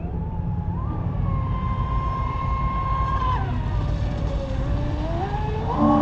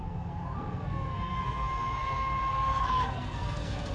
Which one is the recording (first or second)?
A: first